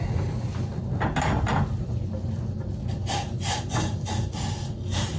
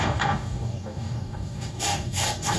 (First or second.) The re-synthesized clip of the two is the second